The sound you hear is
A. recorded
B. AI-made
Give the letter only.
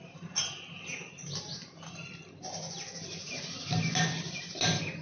A